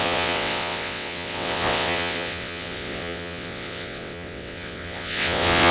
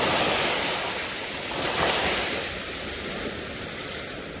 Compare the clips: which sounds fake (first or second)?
first